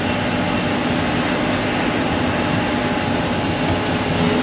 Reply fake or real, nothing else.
real